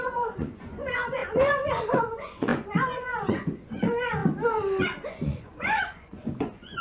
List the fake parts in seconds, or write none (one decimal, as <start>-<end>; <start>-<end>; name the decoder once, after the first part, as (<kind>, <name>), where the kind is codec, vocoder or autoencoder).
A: 0.0-4.2 (vocoder, Vocos); 4.8-6.8